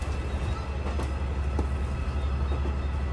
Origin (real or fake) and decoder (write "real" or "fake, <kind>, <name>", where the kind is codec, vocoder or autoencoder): real